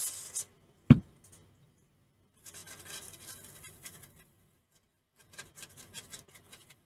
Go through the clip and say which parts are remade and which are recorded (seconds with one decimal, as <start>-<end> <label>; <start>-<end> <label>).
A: 0.0-6.9 recorded